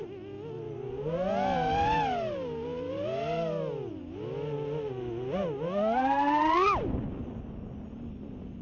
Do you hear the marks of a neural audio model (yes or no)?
no